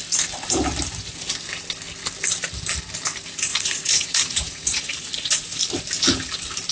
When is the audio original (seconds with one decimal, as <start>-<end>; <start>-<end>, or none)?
0.0-3.5; 5.6-6.7